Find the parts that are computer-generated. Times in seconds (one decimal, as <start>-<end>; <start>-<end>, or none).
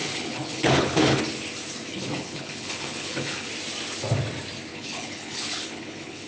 0.0-1.2; 1.9-3.5; 4.7-6.3